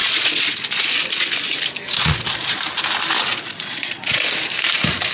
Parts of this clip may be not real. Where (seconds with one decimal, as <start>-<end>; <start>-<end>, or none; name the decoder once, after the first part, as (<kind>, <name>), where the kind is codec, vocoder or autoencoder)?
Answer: 0.0-1.0 (vocoder, Vocos); 2.0-2.6; 3.3-4.2